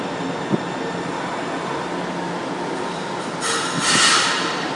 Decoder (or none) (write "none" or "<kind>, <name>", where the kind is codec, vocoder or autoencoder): none